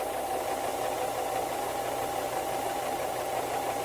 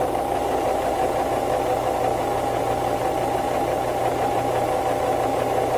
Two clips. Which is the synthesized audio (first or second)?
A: first